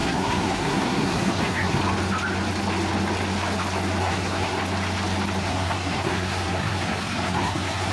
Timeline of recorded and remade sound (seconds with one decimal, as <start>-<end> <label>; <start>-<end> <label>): 0.0-1.8 remade; 1.8-4.0 recorded; 4.0-4.6 remade; 4.6-5.4 recorded; 5.4-7.9 remade